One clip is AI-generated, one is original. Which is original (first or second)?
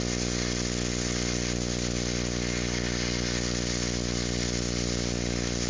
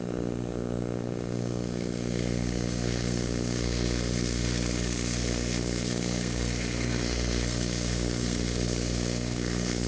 first